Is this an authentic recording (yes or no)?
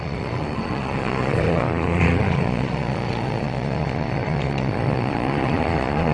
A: no